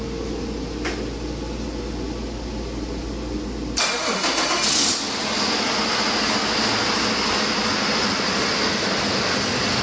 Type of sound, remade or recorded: recorded